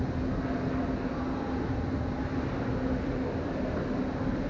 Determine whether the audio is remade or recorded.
recorded